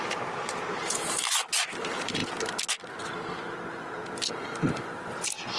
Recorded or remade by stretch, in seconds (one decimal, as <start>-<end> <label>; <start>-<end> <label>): 0.0-2.2 remade; 2.2-5.6 recorded